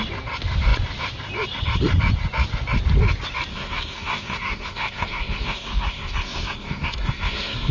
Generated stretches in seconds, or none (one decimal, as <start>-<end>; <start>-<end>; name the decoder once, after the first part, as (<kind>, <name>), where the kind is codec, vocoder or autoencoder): 3.5-7.7 (codec, SNAC)

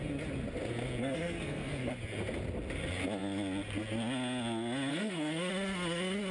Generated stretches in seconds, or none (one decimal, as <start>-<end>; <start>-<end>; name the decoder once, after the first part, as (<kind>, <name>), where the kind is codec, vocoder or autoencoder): 1.0-1.9 (codec, SNAC); 4.9-5.5